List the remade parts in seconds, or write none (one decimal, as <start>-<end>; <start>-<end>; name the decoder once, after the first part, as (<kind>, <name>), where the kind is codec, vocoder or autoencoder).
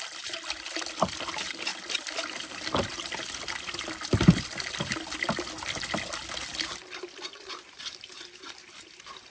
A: none